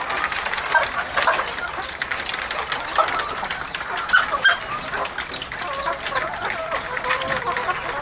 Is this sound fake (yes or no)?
no